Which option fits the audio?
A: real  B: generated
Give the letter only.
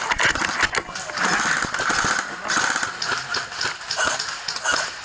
A